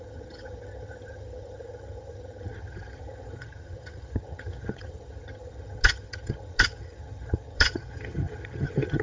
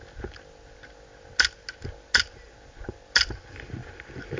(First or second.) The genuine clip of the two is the second